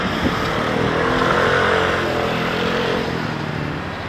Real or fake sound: real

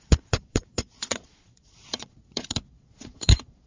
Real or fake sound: fake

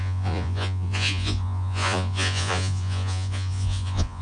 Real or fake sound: fake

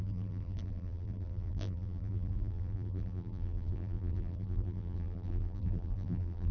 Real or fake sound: fake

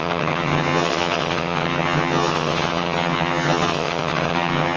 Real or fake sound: fake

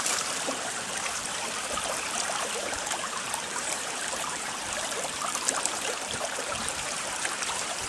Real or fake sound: fake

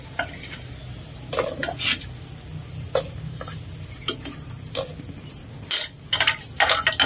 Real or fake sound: real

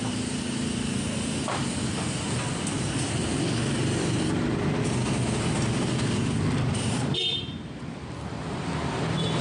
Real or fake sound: fake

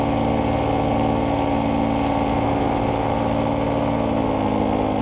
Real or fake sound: real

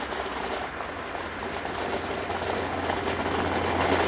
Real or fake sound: real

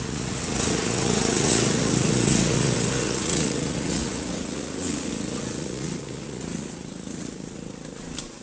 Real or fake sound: fake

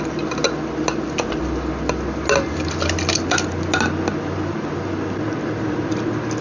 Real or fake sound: real